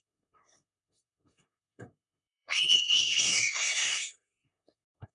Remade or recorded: remade